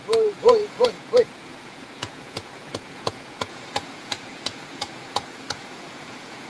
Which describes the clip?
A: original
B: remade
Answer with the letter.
B